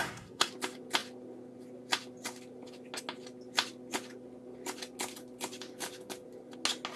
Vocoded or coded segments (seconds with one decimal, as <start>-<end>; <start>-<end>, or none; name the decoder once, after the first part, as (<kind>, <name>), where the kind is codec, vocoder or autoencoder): 0.0-0.5 (codec, SNAC)